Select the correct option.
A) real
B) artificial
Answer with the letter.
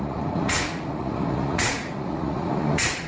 B